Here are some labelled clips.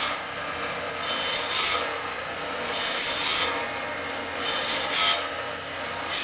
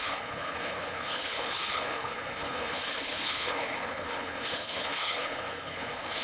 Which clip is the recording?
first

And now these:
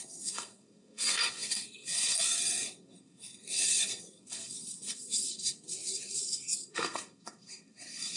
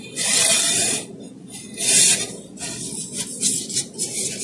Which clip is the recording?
second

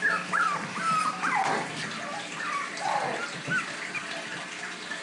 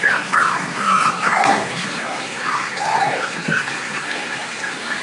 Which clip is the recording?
first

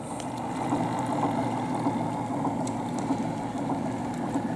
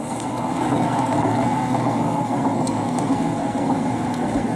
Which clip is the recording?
first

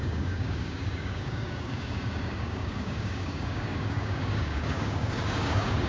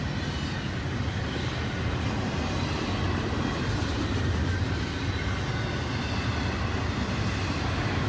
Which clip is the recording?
second